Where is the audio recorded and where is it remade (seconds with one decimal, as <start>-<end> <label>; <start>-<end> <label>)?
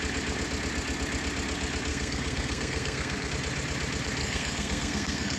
0.0-1.9 recorded; 1.9-3.3 remade; 3.3-4.2 recorded; 4.2-5.4 remade